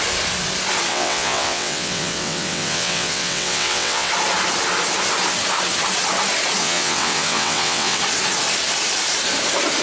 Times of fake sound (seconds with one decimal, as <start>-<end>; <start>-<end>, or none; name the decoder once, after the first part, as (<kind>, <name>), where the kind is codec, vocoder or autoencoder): 0.9-4.1 (vocoder, WaveNeXt); 6.6-8.0